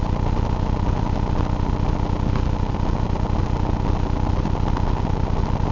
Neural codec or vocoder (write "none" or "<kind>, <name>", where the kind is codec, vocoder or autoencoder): none